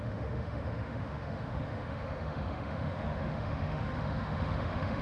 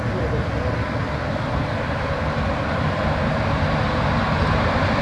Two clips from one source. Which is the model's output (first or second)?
first